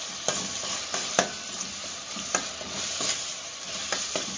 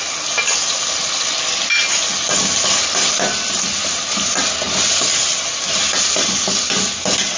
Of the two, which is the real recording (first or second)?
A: second